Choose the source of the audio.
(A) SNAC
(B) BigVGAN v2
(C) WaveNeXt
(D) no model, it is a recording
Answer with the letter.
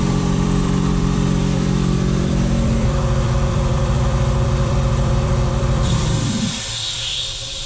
B